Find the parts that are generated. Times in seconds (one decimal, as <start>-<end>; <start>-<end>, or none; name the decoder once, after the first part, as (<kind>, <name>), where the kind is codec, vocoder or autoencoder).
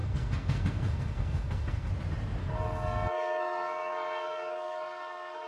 0.0-1.9 (codec, SNAC); 2.4-5.5